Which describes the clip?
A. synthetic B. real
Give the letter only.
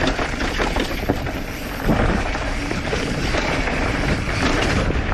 A